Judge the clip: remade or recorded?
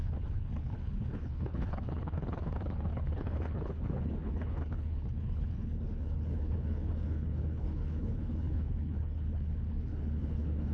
remade